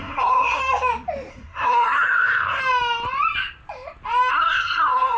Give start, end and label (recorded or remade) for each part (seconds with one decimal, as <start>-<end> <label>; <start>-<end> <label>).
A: 0.0-0.6 remade; 0.6-1.3 recorded; 1.3-2.6 remade; 2.6-4.3 recorded; 4.3-5.2 remade